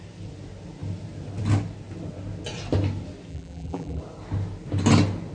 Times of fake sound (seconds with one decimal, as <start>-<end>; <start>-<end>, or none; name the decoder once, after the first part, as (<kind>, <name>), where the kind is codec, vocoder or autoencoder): 3.3-4.0 (vocoder, BigVGAN v2)